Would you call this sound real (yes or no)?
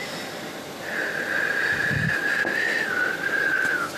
no